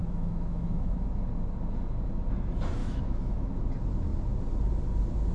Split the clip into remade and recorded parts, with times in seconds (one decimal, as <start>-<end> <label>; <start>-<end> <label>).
0.0-1.0 remade; 1.0-2.8 recorded; 2.8-3.5 remade; 3.5-5.3 recorded